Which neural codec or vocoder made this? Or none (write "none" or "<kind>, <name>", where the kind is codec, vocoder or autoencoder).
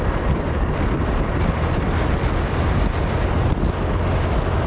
none